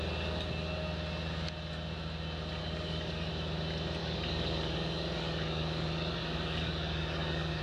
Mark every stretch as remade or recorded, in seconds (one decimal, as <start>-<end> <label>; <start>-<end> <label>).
0.0-2.6 recorded; 2.6-3.3 remade; 3.3-4.0 recorded; 4.0-7.6 remade